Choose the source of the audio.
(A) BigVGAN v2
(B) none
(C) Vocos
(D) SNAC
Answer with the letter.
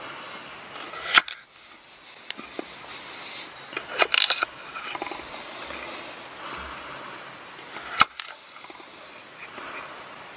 B